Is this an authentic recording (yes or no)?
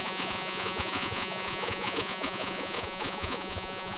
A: no